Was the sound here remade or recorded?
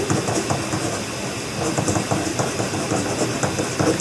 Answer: recorded